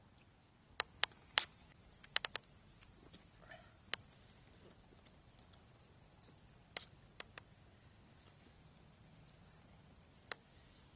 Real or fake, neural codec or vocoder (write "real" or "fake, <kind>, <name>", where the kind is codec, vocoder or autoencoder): real